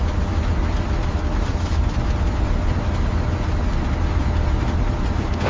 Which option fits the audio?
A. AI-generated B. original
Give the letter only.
B